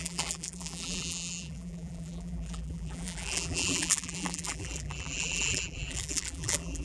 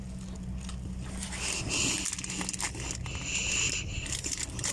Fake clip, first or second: first